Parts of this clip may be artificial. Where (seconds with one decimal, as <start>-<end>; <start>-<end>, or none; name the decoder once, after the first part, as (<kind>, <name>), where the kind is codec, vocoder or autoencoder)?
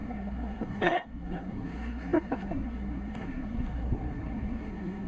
0.0-5.1 (codec, SNAC)